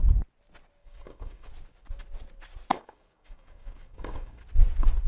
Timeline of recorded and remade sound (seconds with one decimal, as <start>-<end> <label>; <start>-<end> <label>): 0.0-0.8 recorded; 0.8-1.5 remade; 1.5-2.7 recorded; 2.7-4.4 remade; 4.4-5.1 recorded